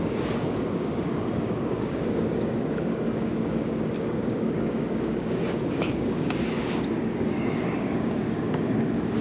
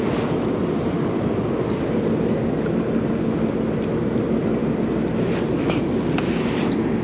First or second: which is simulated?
first